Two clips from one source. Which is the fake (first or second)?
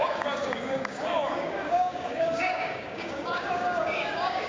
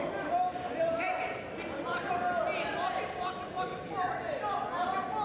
first